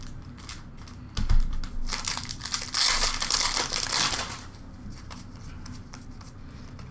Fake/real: real